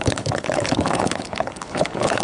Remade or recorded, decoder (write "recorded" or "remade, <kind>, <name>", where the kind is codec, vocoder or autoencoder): remade, codec, HILCodec